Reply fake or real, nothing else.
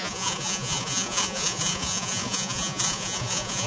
fake